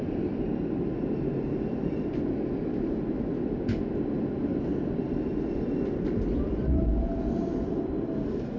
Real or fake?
real